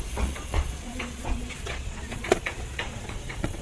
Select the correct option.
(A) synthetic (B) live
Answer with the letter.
A